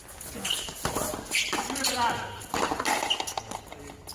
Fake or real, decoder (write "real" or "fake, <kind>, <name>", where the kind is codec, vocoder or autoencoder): real